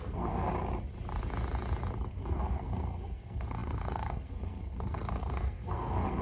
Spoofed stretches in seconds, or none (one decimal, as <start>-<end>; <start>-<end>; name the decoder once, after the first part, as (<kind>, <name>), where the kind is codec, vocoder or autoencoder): 0.0-0.5 (codec, SNAC); 2.1-6.2